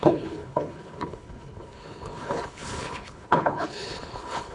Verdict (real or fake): fake